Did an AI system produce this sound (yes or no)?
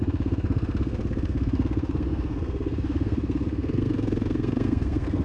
yes